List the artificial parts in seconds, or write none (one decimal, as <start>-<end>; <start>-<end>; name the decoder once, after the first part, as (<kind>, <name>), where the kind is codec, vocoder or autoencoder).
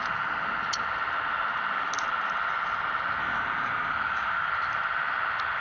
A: 3.2-4.5 (codec, DAC)